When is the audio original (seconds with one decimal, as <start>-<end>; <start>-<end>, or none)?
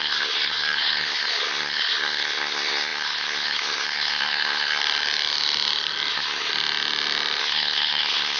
4.8-6.1; 6.5-7.4